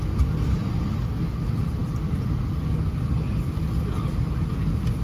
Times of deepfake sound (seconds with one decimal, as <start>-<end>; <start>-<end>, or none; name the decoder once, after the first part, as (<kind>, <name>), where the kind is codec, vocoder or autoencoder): none